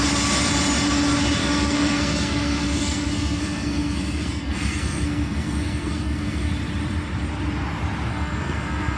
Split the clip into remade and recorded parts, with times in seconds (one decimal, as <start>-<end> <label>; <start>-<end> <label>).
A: 0.0-1.4 recorded; 1.4-6.5 remade; 6.5-8.1 recorded; 8.1-9.0 remade